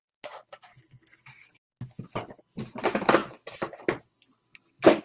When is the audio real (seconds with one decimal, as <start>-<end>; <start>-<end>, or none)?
0.0-0.7; 2.4-5.0